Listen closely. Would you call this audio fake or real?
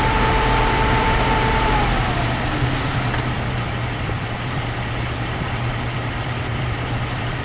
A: fake